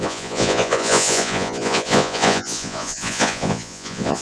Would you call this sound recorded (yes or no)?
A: no